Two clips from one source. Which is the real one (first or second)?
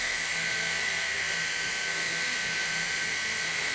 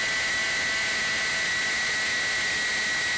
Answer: second